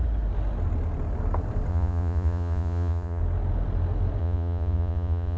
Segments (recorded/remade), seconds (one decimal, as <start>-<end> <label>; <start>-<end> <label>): 0.0-1.7 recorded; 1.7-3.2 remade; 3.2-4.2 recorded; 4.2-5.4 remade